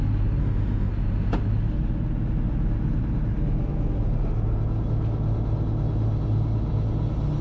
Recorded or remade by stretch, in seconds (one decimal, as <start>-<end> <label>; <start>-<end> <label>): 0.0-0.4 recorded; 0.4-0.9 remade; 0.9-7.4 recorded